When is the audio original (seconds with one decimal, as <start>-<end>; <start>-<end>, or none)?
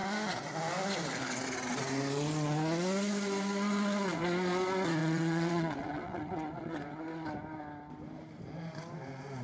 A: 0.0-5.0; 7.0-9.4